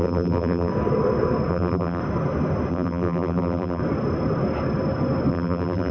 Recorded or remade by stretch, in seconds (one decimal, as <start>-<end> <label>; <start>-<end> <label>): 0.0-0.7 remade; 0.7-1.5 recorded; 1.5-2.0 remade; 2.0-2.7 recorded; 2.7-3.8 remade; 3.8-5.3 recorded; 5.3-5.9 remade